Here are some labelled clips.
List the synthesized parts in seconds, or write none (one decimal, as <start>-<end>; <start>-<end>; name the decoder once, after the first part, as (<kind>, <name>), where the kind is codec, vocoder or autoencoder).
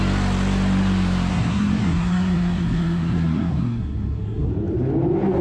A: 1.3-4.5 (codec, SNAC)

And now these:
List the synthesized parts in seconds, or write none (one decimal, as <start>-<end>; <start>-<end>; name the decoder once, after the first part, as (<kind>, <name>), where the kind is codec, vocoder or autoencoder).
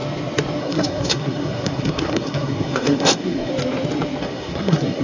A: 0.6-3.5 (codec, SNAC); 4.2-5.0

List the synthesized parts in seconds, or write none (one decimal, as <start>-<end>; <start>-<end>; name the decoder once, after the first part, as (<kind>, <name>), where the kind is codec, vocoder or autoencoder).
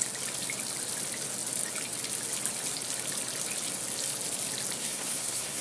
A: 4.8-5.6 (codec, SNAC)